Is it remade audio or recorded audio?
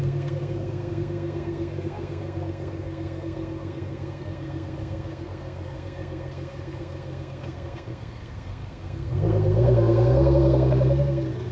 remade